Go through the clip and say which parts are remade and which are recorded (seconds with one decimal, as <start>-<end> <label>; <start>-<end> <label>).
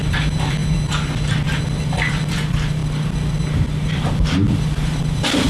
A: 0.0-2.8 remade; 2.8-3.9 recorded; 3.9-5.5 remade